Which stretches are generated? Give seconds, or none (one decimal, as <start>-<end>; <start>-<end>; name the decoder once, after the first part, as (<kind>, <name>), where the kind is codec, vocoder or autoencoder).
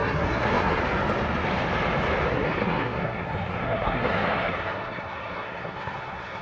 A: 0.0-0.8 (codec, SNAC); 2.3-6.4